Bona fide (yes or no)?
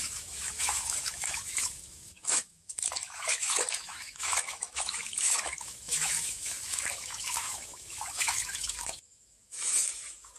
no